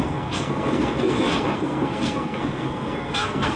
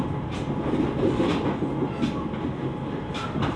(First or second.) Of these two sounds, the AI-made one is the first